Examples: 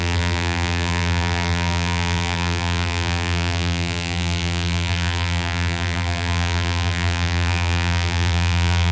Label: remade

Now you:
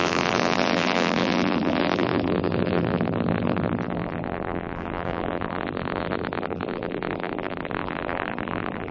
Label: remade